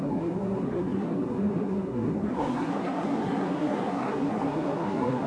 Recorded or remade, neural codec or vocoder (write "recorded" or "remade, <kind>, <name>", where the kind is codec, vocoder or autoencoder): remade, codec, SNAC